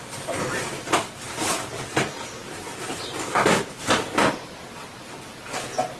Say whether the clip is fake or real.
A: real